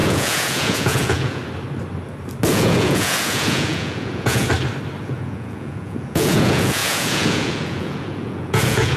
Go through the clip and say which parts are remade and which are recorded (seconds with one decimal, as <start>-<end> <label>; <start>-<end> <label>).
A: 0.0-1.4 remade; 1.4-2.5 recorded; 2.5-4.5 remade; 4.5-5.0 recorded; 5.0-9.0 remade

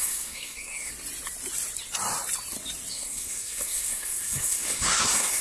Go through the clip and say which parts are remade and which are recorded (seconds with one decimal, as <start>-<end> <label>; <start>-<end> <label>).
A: 0.0-0.9 remade; 0.9-2.9 recorded; 2.9-5.4 remade